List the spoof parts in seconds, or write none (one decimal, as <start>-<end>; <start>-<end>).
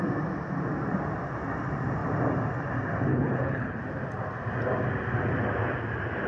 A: 3.1-3.8